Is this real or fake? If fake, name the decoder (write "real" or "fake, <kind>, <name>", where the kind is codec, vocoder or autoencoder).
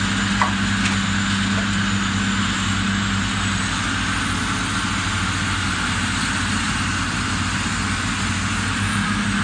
real